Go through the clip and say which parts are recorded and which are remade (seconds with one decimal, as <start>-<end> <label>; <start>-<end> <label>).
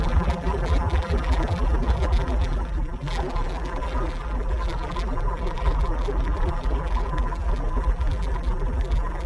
0.0-9.3 remade